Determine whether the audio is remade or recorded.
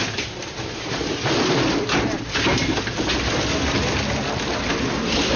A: recorded